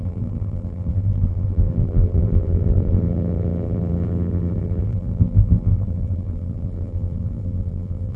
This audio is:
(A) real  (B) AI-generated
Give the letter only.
B